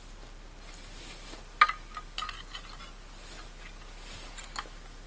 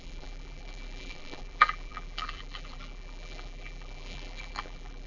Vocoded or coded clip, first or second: second